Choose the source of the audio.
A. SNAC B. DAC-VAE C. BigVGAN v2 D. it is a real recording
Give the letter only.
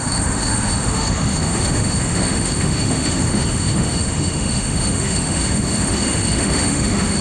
B